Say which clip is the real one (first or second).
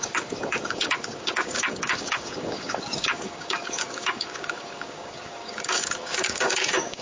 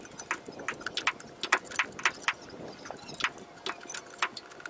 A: second